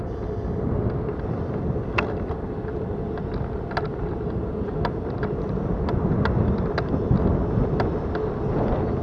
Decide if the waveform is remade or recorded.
recorded